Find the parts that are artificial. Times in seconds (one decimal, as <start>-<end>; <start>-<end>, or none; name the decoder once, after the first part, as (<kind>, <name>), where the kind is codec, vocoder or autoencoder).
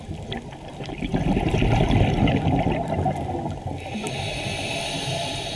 none